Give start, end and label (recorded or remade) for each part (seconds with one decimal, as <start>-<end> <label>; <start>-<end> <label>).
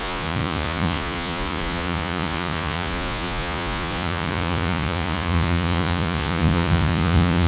0.0-7.5 remade